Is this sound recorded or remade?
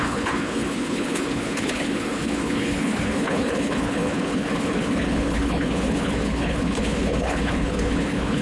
remade